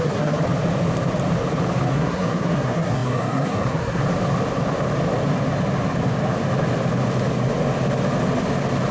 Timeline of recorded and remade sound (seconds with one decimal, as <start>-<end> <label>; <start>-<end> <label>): 0.0-0.4 remade; 0.4-1.9 recorded; 1.9-4.0 remade; 4.0-8.9 recorded